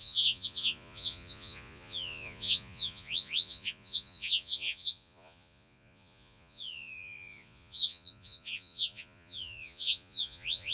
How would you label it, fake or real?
fake